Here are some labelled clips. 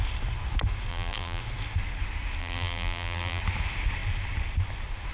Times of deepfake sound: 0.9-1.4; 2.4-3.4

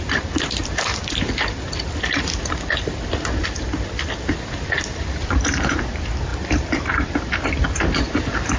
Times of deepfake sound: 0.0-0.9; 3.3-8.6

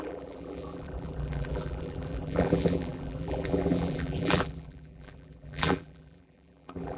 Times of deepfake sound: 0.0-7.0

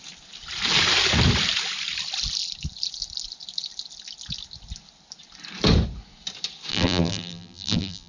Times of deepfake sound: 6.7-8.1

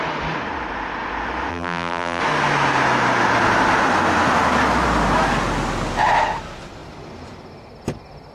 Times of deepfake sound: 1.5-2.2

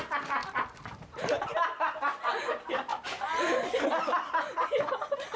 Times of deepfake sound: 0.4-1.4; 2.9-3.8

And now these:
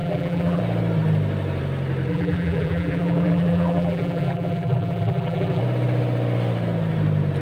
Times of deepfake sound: 0.0-0.6; 2.1-5.6

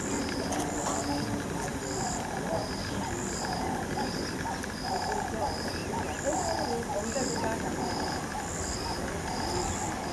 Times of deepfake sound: 5.8-6.9